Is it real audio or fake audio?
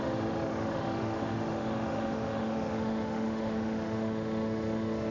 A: fake